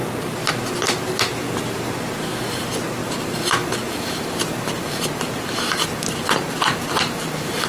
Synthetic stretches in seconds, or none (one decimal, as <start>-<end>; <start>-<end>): 1.3-1.8; 3.0-7.7